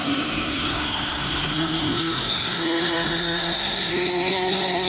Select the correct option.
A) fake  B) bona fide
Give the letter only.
A